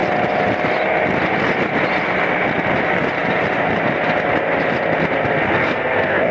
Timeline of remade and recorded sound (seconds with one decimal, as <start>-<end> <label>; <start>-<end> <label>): 0.0-5.6 recorded; 5.6-6.3 remade